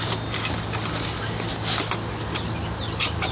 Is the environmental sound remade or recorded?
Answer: recorded